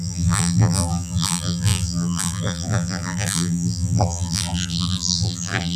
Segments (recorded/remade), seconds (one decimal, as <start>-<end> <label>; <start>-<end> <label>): 0.0-5.8 remade